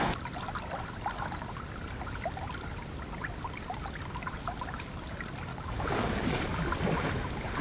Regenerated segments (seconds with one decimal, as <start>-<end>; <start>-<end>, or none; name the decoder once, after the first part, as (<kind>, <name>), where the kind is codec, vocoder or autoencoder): 5.5-6.4 (codec, DAC)